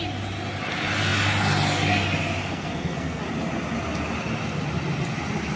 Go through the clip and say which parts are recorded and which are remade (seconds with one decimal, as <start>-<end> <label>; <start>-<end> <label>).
0.0-2.4 recorded; 2.4-3.2 remade; 3.2-5.6 recorded